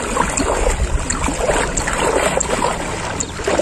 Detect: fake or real real